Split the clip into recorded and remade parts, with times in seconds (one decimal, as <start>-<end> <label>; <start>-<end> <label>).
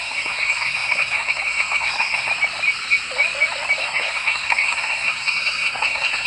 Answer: 0.0-2.3 remade; 2.3-3.8 recorded; 3.8-6.3 remade